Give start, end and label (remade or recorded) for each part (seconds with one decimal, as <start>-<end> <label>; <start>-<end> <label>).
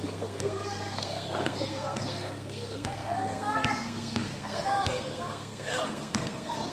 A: 0.0-6.7 remade